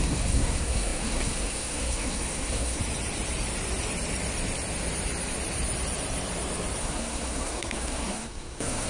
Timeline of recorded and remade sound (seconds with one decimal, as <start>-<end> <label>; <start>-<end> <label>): 0.0-2.8 remade; 2.8-6.8 recorded; 6.8-8.9 remade